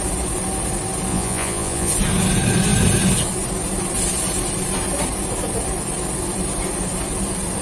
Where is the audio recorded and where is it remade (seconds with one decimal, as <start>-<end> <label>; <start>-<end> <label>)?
0.0-1.1 recorded; 1.1-1.9 remade; 1.9-7.6 recorded